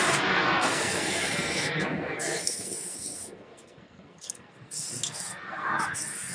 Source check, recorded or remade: remade